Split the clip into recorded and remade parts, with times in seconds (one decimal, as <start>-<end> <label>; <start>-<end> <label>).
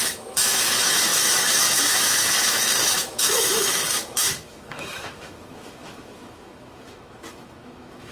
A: 0.0-8.1 remade